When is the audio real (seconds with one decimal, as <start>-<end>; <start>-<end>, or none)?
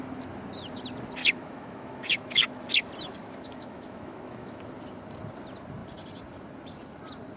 0.0-1.2; 2.7-3.2; 4.6-7.4